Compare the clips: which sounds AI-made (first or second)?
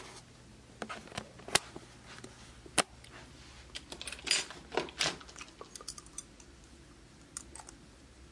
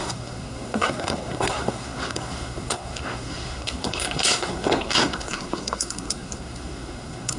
second